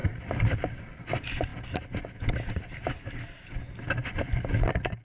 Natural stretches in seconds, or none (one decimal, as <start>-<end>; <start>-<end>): 0.0-5.0